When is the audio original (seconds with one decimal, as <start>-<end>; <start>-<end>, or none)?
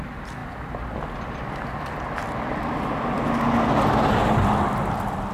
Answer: 0.0-2.2; 3.2-5.3